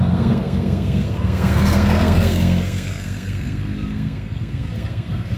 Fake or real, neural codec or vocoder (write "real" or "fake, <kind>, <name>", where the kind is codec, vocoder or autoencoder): fake, codec, SNAC